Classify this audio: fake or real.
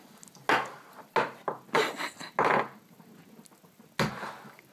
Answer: real